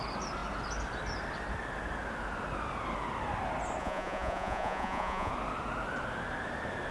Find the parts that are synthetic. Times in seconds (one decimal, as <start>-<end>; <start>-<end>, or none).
3.8-5.3